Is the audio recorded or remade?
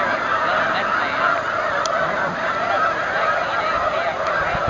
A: recorded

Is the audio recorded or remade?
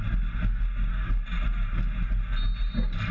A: recorded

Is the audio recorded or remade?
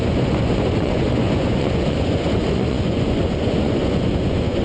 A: remade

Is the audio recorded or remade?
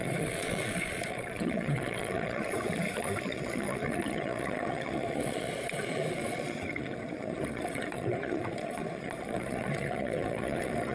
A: remade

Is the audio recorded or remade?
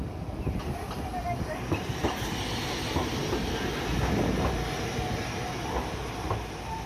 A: recorded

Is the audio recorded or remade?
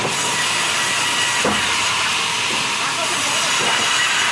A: recorded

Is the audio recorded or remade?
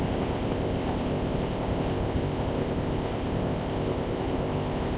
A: remade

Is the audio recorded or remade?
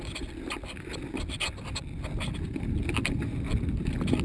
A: recorded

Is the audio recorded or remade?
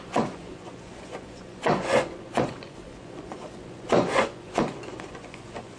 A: remade